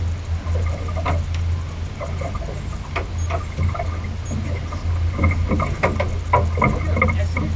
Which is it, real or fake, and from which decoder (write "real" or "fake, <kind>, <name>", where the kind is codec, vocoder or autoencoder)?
real